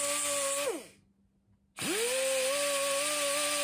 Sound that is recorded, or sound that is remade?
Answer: recorded